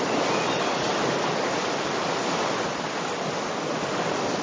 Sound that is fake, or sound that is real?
real